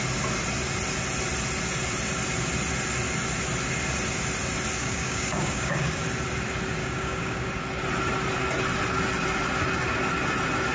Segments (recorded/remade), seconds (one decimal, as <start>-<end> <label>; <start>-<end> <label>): 0.0-4.8 recorded; 4.8-6.0 remade; 6.0-6.8 recorded; 6.8-7.5 remade; 7.5-10.7 recorded